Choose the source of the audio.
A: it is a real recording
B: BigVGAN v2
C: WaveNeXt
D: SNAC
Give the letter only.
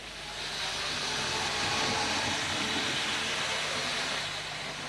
A